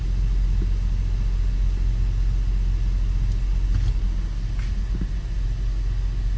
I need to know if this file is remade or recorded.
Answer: recorded